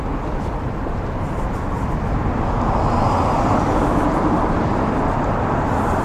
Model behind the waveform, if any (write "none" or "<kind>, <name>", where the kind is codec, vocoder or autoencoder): none